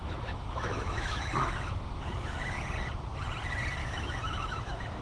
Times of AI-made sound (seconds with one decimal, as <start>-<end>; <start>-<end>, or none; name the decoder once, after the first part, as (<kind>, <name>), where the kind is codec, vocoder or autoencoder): 0.0-2.6 (autoencoder, DAC-VAE); 3.8-5.0